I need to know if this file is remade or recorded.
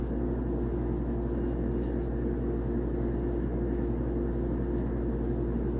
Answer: recorded